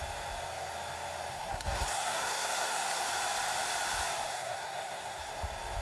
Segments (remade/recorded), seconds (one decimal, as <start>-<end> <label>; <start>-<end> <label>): 0.0-1.3 recorded; 1.3-3.0 remade; 3.0-4.3 recorded; 4.3-5.3 remade; 5.3-5.8 recorded